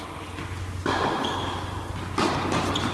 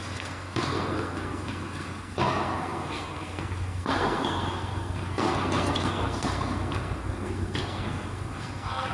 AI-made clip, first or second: second